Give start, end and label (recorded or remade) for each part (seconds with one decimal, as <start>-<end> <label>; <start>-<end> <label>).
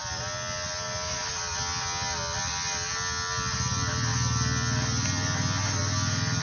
0.0-6.4 recorded